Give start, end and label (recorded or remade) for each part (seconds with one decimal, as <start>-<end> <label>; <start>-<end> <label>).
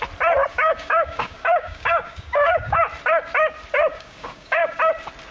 0.0-0.5 recorded; 0.5-2.8 remade; 2.8-3.9 recorded; 3.9-4.8 remade; 4.8-5.3 recorded